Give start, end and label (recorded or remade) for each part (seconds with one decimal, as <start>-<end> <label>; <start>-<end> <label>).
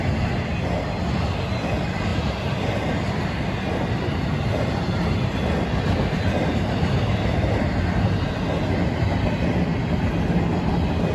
0.0-11.1 recorded